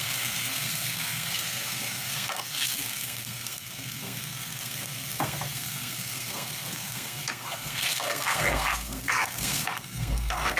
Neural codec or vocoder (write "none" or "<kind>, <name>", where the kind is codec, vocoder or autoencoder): codec, SNAC